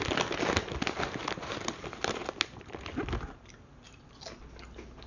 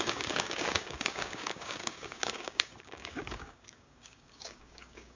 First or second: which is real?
first